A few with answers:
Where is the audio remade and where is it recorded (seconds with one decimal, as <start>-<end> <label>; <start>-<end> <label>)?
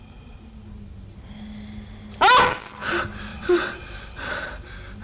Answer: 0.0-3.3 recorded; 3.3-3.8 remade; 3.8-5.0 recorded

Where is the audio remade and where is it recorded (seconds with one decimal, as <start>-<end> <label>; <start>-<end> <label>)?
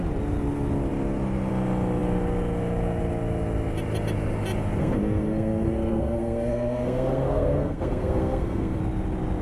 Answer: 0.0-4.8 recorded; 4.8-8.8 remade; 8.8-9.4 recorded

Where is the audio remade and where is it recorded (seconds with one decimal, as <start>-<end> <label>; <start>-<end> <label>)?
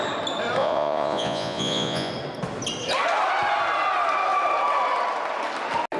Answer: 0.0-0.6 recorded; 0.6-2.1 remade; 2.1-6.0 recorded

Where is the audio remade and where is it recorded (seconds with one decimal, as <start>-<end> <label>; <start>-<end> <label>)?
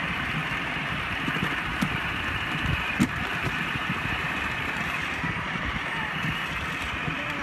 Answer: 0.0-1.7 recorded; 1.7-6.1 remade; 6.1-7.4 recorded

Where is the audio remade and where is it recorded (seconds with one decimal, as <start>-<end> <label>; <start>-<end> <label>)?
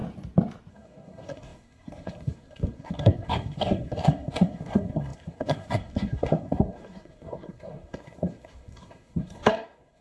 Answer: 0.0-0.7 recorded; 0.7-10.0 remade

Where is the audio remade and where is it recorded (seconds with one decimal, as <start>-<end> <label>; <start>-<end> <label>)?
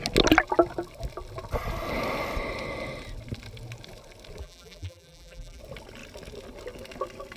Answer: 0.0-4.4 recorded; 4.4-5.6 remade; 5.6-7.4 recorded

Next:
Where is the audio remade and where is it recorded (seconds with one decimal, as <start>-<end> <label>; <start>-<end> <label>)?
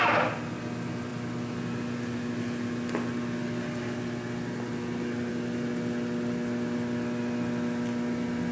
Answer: 0.0-8.5 recorded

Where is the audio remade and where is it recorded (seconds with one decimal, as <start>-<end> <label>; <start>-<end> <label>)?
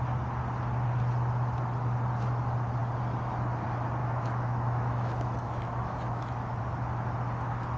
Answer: 0.0-4.0 recorded; 4.0-6.6 remade; 6.6-7.8 recorded